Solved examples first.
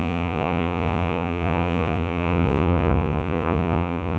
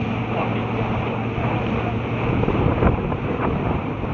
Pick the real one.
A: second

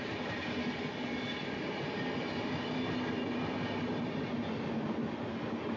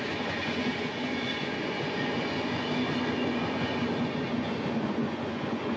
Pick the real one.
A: first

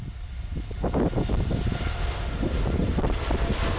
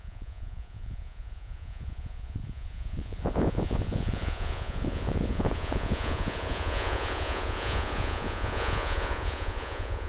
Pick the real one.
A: first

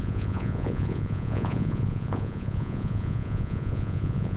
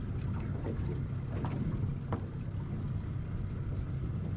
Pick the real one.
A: second